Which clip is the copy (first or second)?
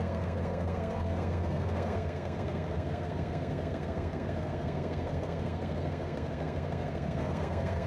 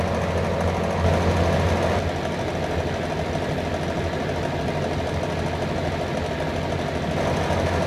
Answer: first